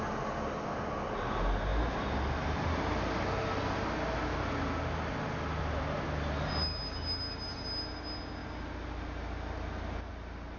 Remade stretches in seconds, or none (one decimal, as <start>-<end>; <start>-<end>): none